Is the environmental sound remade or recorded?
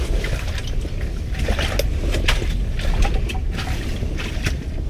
recorded